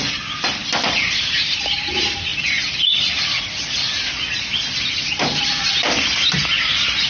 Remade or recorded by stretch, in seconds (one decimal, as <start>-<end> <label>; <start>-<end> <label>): 0.0-0.6 recorded; 0.6-1.8 remade; 1.8-2.3 recorded; 2.3-3.2 remade; 3.2-7.1 recorded